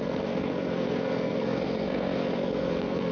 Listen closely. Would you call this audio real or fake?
fake